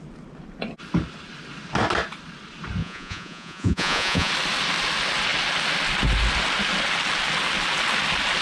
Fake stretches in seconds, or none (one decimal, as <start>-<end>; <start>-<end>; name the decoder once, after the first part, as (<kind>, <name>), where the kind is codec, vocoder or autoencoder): 2.8-4.3 (vocoder, Vocos)